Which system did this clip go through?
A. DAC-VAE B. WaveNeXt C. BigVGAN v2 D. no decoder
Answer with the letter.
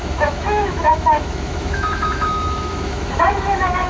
A